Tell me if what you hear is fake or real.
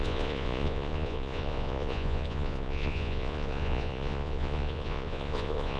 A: fake